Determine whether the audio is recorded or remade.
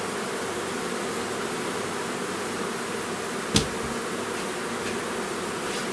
recorded